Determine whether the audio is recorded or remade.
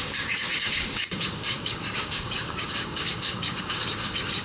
remade